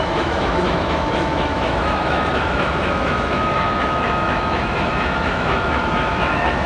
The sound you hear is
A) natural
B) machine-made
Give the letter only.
B